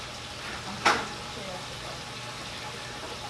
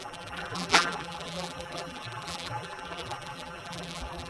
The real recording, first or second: first